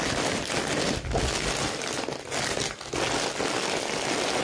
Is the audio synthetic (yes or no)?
no